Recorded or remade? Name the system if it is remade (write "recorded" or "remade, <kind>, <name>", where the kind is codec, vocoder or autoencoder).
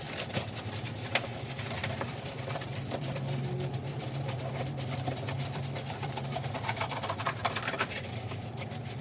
remade, vocoder, BigVGAN v2